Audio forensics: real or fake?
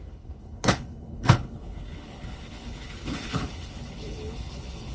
fake